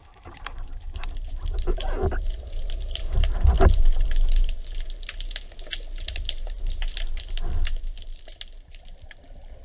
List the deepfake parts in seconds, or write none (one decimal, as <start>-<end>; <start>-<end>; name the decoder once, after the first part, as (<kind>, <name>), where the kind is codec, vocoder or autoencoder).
0.0-4.5 (vocoder, BigVGAN v2)